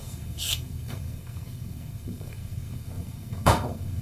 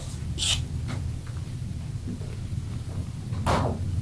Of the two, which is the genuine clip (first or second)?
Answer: second